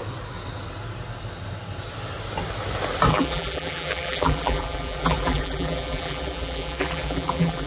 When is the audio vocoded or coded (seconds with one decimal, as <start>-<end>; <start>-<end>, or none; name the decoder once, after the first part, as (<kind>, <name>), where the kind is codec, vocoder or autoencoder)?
3.1-7.7 (vocoder, BigVGAN v2)